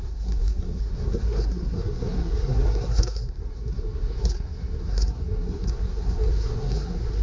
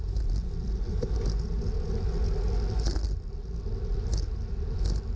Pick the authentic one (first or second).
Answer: second